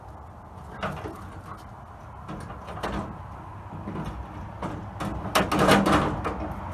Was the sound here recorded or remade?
recorded